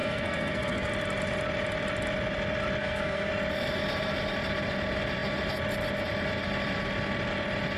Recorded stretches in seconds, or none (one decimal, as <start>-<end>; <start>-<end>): 0.9-2.8; 3.3-7.8